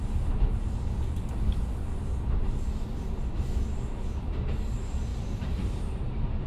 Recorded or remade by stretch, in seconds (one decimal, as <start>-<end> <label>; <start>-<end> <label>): 0.0-5.1 recorded; 5.1-6.5 remade